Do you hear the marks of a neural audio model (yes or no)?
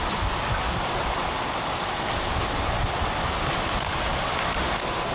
no